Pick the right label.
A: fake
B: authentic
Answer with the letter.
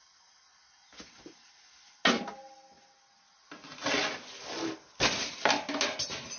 B